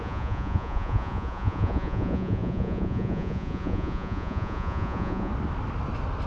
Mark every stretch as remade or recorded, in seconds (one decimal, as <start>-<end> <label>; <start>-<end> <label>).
0.0-5.3 remade; 5.3-6.3 recorded